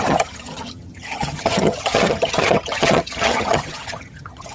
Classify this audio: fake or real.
fake